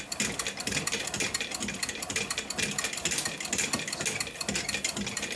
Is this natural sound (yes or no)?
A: yes